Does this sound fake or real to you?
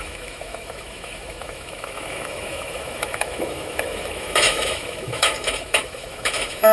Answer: fake